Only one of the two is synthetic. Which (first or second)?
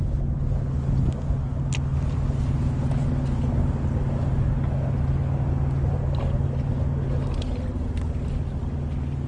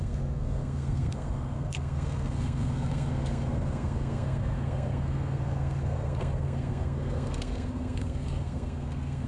second